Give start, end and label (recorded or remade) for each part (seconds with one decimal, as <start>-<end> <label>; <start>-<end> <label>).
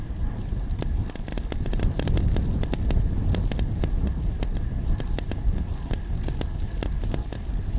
0.0-7.8 recorded